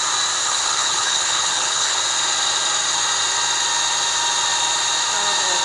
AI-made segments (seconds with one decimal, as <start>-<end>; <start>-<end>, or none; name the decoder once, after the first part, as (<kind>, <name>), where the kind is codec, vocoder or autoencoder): 0.4-2.0 (codec, HILCodec)